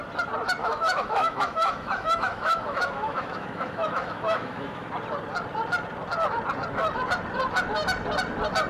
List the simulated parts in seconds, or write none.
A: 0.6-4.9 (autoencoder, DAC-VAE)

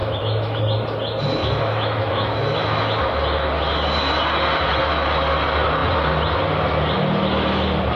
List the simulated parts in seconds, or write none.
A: 0.0-0.6 (autoencoder, DAC-VAE); 1.4-2.8

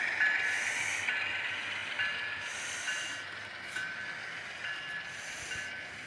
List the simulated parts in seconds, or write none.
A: none

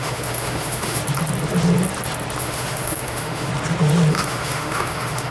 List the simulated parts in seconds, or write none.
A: 0.0-1.0 (autoencoder, DAC-VAE); 2.4-3.5; 4.1-5.3

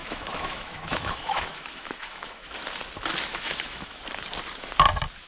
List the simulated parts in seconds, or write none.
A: 0.0-2.5 (autoencoder, DAC-VAE); 3.3-4.0

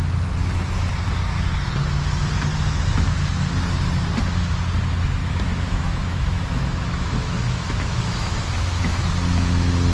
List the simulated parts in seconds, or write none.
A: 5.2-9.1 (autoencoder, DAC-VAE)